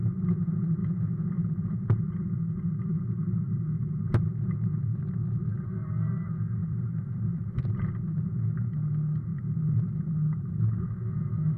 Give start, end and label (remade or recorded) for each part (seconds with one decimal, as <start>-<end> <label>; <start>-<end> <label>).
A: 0.0-6.6 recorded; 6.6-7.6 remade; 7.6-9.3 recorded; 9.3-10.5 remade; 10.5-11.6 recorded